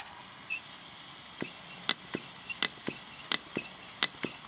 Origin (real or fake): real